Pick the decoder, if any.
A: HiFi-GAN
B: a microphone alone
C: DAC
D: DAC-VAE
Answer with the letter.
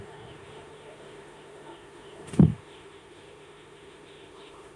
D